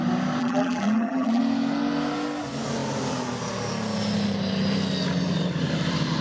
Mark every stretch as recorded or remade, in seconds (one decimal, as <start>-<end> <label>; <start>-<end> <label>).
0.0-0.4 recorded; 0.4-1.4 remade; 1.4-6.2 recorded